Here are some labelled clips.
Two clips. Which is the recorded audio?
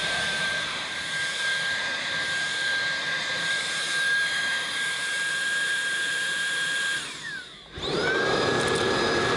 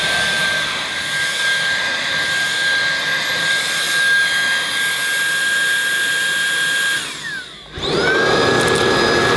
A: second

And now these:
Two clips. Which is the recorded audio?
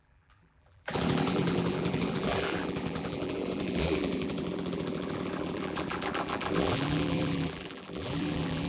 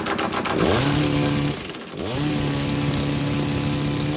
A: second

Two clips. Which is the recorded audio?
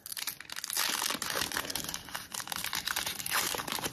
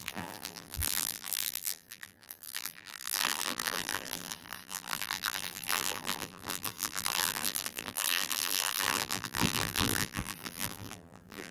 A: first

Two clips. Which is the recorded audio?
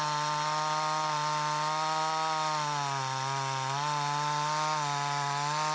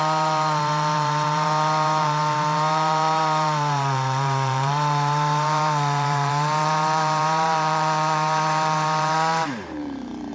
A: first